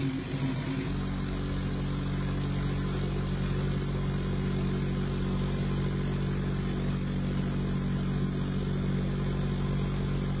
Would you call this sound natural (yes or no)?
yes